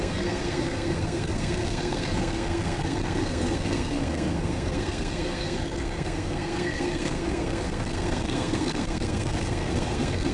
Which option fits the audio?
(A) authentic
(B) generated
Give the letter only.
B